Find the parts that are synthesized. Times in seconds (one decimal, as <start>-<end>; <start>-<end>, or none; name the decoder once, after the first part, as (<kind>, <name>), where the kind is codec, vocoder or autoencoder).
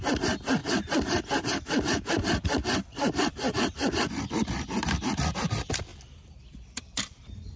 0.6-1.2 (vocoder, BigVGAN v2); 3.0-4.9; 5.9-7.6